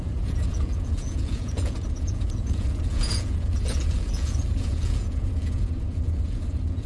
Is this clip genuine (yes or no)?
no